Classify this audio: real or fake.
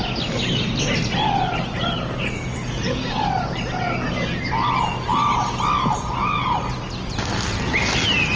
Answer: real